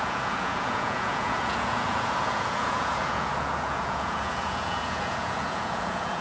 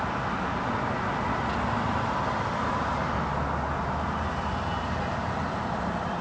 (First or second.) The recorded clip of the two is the second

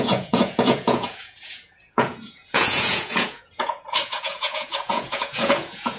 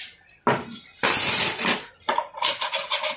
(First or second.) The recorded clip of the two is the second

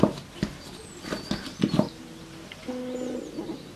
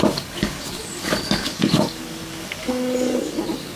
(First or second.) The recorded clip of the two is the first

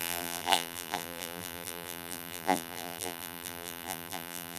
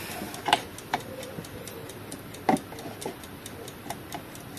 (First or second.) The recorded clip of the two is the second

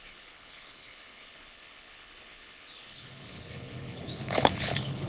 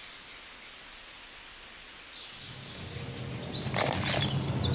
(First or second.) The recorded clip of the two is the second